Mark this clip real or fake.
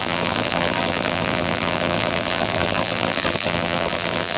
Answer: fake